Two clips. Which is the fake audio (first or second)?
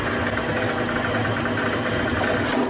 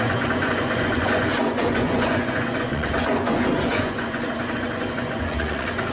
second